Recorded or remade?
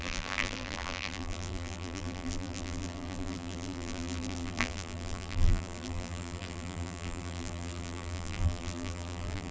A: remade